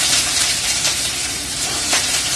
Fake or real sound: fake